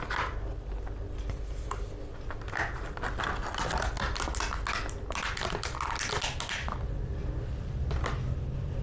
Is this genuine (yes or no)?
yes